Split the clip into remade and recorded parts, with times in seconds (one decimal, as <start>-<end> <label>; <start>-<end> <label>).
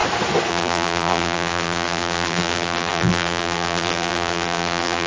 0.0-0.5 recorded; 0.5-5.1 remade